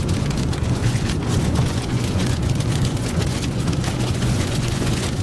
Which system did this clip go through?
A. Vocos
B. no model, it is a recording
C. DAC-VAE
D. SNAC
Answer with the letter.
A